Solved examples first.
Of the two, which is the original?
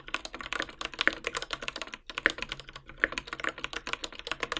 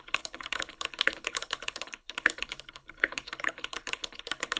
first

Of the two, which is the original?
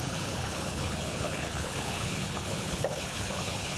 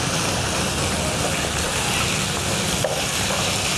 second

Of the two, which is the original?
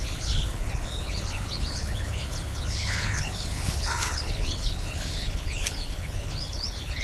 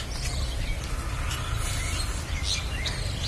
second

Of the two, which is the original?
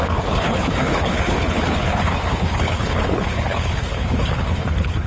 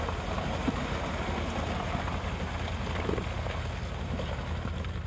second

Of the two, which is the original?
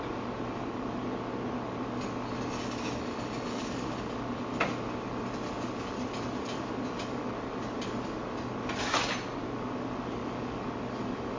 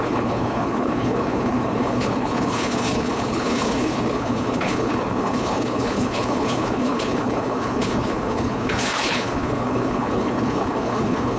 first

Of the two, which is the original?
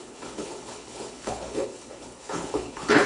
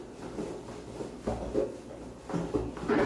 second